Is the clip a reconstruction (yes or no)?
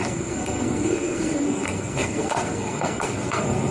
yes